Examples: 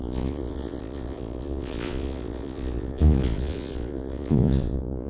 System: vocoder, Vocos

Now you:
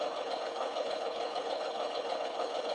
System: codec, HILCodec